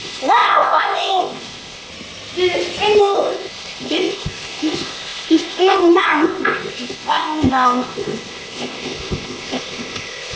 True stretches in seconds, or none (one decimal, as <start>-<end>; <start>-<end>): 1.9-3.0